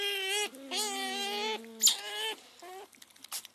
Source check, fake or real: real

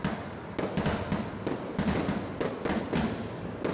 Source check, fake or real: real